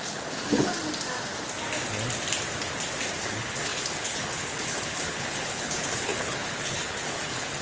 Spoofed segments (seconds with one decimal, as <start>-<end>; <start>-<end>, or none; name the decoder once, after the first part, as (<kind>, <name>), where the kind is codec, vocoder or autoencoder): 0.0-0.7 (codec, HILCodec); 3.2-7.6